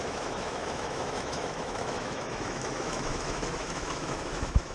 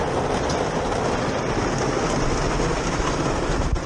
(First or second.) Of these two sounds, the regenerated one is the first